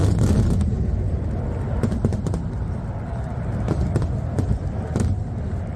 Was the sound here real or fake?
fake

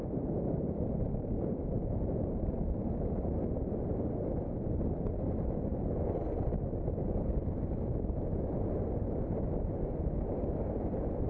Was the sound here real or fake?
real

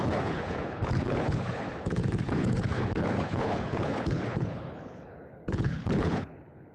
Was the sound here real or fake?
fake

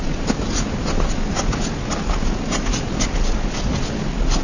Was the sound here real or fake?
real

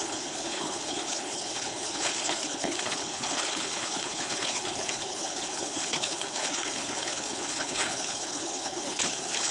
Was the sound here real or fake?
fake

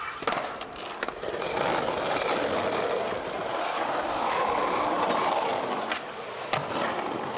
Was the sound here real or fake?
real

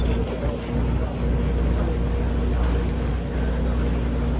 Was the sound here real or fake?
real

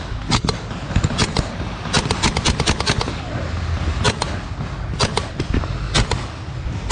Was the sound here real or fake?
real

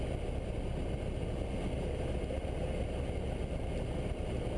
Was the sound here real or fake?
real